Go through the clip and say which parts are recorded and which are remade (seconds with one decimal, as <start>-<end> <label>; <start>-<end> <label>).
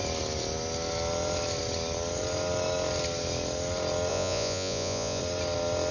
0.0-4.1 recorded; 4.1-5.2 remade; 5.2-5.9 recorded